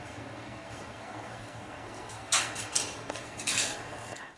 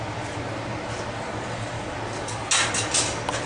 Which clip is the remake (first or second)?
first